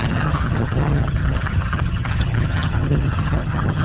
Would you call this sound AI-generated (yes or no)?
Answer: yes